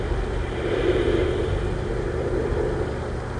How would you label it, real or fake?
real